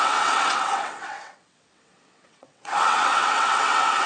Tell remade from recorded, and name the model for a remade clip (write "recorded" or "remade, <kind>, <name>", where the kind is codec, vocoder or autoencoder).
remade, vocoder, WaveNeXt